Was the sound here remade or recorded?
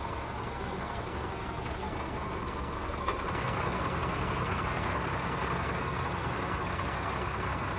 remade